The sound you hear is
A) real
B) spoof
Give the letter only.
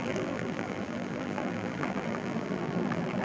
B